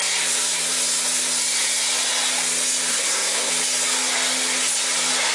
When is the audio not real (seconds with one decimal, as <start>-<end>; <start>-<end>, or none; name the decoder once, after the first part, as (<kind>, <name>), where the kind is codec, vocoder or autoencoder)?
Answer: 2.9-3.5 (codec, SNAC)